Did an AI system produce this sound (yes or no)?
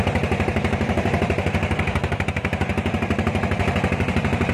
yes